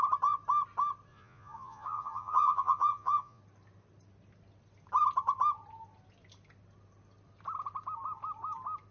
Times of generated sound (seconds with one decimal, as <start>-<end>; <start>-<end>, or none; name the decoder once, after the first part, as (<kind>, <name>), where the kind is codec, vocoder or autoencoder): 1.1-3.4 (vocoder, Vocos)